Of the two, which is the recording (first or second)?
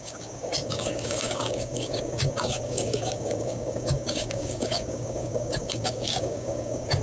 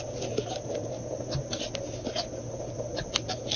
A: second